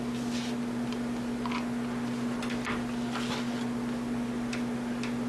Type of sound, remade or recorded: recorded